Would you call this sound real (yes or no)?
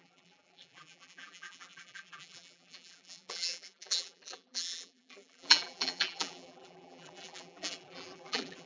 no